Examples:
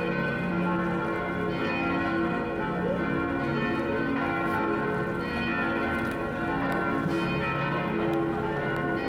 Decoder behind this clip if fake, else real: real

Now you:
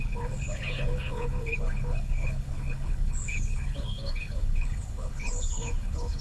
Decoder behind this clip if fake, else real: fake, codec, HILCodec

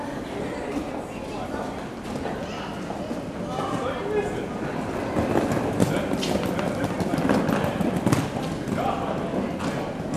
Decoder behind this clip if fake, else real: real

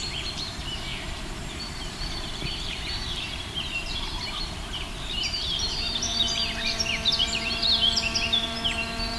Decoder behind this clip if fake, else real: fake, vocoder, BigVGAN v2